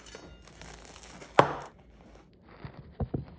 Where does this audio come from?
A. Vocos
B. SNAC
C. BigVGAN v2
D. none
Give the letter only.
D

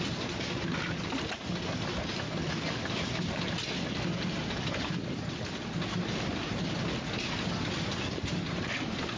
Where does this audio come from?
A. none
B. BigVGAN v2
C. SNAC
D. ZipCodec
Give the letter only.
A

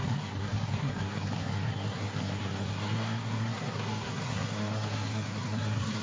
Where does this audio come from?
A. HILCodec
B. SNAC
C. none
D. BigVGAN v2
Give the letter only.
B